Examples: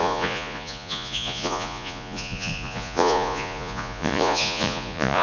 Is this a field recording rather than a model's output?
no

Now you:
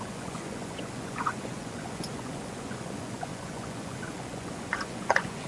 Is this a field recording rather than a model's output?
no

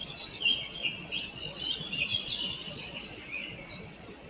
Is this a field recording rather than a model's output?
no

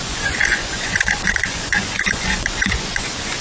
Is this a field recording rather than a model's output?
no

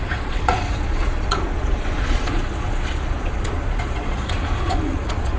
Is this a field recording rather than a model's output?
no